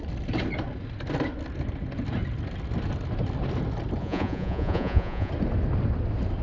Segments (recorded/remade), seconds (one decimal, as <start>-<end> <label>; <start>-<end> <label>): 0.0-4.0 recorded; 4.0-5.3 remade; 5.3-6.4 recorded